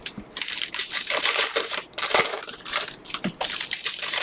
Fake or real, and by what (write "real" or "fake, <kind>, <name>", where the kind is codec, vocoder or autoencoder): fake, vocoder, BigVGAN v2